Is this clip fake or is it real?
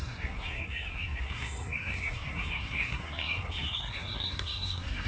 fake